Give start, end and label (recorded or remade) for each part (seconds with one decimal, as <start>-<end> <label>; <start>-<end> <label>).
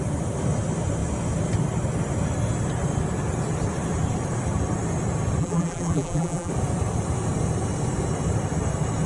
0.0-5.4 recorded; 5.4-6.5 remade; 6.5-9.1 recorded